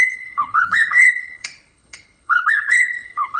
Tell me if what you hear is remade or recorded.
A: remade